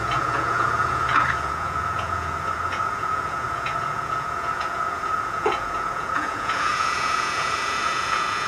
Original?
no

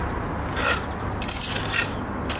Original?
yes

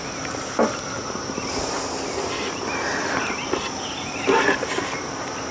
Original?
yes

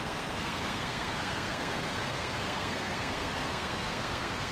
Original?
no